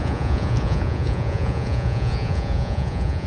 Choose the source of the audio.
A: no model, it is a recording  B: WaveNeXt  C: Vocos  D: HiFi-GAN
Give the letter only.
C